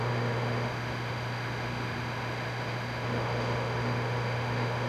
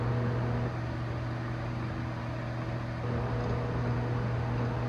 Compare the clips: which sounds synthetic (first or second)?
first